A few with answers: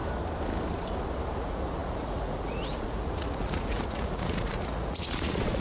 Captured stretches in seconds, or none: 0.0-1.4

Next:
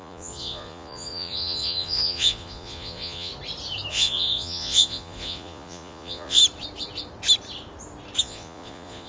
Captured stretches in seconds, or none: 3.3-3.9; 6.4-8.2

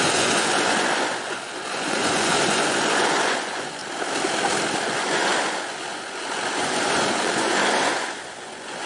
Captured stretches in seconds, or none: 3.8-4.8

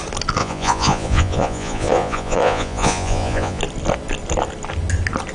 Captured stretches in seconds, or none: 0.0-0.4; 3.6-5.3

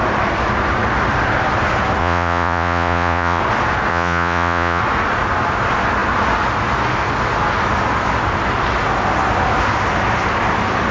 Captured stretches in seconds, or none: 0.0-2.0; 3.4-3.9; 4.8-10.9

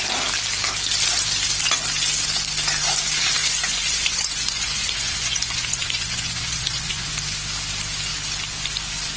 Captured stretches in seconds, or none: 0.0-3.4; 7.1-9.2

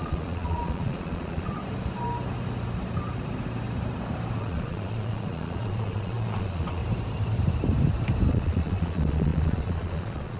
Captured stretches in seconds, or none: 1.6-4.4; 6.8-8.3